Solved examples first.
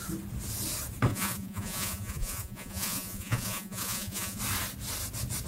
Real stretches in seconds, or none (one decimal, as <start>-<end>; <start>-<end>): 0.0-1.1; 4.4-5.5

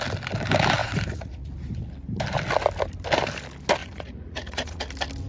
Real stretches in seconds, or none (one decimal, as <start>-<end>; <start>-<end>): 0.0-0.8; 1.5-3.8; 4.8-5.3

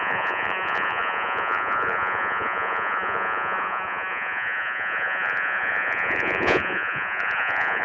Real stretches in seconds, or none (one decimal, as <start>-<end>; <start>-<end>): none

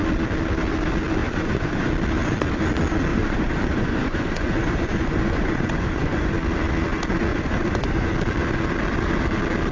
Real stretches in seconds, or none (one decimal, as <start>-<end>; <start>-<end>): 0.0-1.2; 1.9-3.1; 6.3-7.3; 8.1-9.7

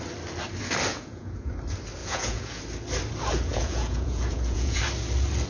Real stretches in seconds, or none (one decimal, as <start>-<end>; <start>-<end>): 0.0-0.9; 1.5-2.0; 2.6-3.5; 4.8-5.5

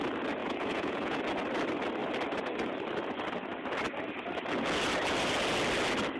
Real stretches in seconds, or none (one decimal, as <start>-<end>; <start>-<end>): 0.0-0.4; 1.2-6.2